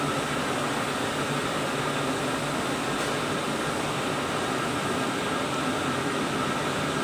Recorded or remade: recorded